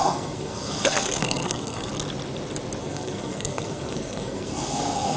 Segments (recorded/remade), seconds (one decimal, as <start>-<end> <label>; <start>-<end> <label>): 0.0-1.9 remade; 1.9-2.8 recorded; 2.8-5.2 remade